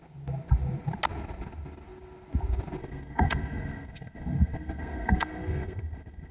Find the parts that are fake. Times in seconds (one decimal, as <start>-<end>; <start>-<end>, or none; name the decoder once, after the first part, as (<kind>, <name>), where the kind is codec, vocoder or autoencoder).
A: 2.8-6.3 (codec, SNAC)